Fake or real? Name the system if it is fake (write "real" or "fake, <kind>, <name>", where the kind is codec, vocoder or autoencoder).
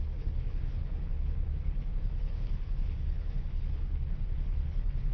fake, codec, HILCodec